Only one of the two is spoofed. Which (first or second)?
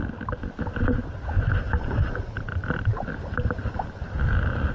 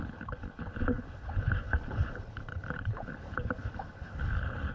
second